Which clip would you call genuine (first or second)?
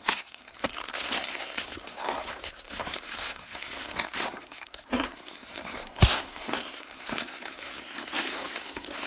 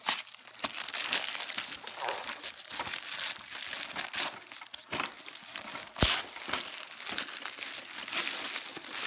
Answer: second